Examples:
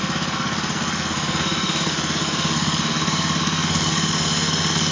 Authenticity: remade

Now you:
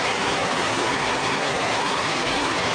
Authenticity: remade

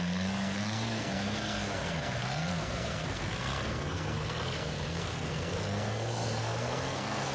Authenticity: remade